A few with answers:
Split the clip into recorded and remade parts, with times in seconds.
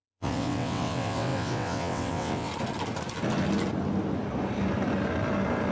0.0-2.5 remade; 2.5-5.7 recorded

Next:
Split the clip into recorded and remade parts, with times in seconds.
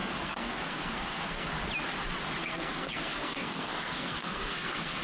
0.0-1.5 remade; 1.5-2.4 recorded; 2.4-5.0 remade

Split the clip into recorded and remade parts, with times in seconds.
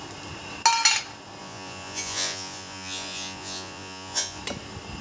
0.0-1.4 recorded; 1.4-4.4 remade; 4.4-5.0 recorded